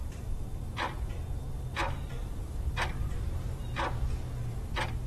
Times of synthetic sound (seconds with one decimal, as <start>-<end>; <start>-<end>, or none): 0.0-1.1; 2.2-3.7